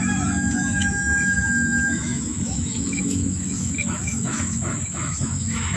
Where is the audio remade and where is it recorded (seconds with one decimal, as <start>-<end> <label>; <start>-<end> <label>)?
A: 0.0-5.8 remade